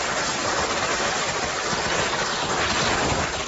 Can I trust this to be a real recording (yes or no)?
yes